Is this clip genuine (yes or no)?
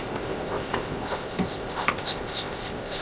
no